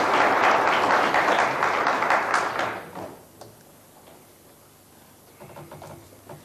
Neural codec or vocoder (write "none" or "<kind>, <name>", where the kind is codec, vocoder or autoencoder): none